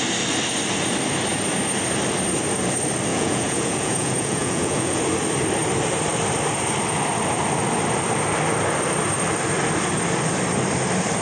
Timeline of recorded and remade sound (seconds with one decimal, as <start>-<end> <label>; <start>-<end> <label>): 0.0-3.1 recorded; 3.1-5.0 remade; 5.0-11.2 recorded